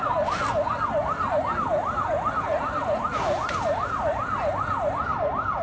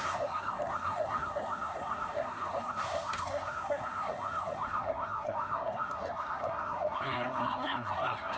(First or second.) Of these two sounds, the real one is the first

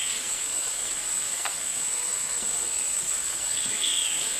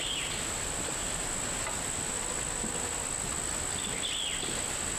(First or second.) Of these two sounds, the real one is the second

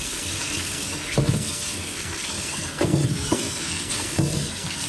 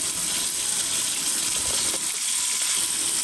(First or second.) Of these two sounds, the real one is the second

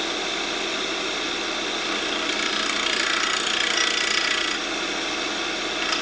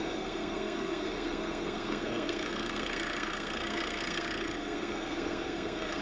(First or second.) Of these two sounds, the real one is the first